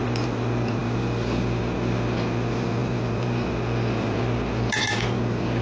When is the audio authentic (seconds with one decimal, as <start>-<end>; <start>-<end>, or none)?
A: 0.0-5.6